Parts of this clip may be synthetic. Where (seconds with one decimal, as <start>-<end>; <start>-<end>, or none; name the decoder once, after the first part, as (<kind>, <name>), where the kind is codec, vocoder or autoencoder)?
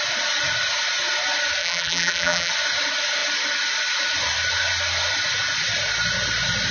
1.6-2.5 (vocoder, BigVGAN v2)